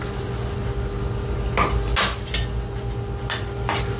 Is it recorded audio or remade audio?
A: recorded